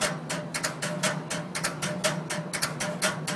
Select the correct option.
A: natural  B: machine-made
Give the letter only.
A